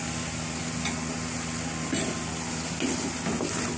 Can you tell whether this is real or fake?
real